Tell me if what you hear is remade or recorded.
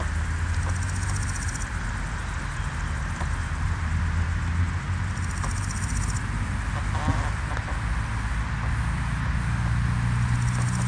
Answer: recorded